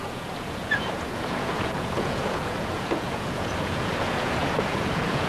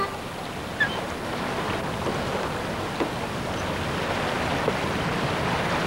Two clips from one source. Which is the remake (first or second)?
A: first